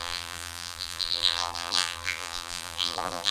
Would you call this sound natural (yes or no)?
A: no